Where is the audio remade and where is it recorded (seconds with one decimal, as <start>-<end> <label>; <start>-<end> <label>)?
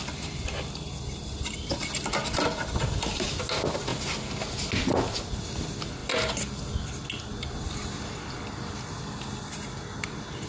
0.0-10.5 recorded